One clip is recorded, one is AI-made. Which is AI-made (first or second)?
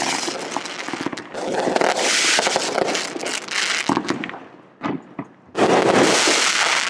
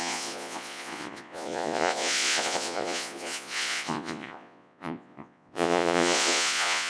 second